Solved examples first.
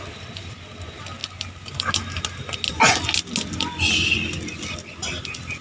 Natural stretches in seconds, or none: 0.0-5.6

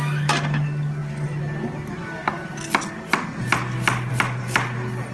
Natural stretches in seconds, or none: 0.0-5.1

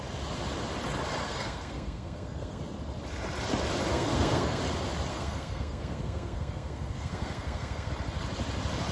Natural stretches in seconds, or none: 0.0-1.2; 2.6-3.9; 4.6-5.1; 7.9-8.9

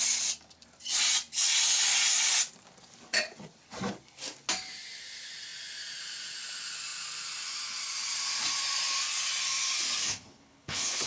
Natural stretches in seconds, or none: 0.0-10.0